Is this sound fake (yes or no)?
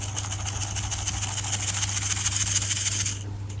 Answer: no